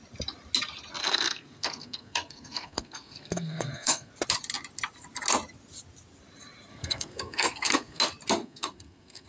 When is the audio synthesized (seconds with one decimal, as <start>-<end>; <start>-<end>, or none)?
1.0-4.1; 6.7-8.0; 8.4-9.3